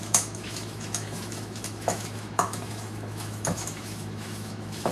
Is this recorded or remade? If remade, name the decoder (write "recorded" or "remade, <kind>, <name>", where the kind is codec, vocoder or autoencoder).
remade, autoencoder, DAC-VAE